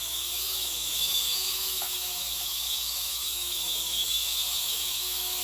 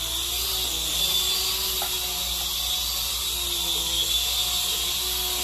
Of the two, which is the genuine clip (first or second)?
second